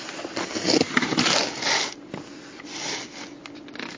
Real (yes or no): yes